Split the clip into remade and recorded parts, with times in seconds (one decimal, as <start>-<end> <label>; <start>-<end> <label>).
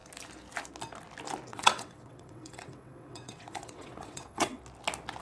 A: 0.0-1.5 recorded; 1.5-4.6 remade; 4.6-5.2 recorded